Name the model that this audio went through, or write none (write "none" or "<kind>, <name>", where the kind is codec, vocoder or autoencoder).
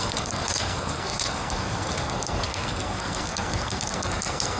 codec, SNAC